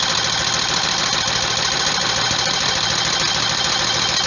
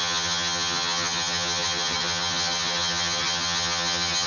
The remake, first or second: second